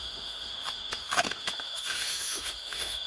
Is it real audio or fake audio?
fake